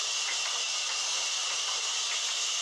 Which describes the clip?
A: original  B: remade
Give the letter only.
A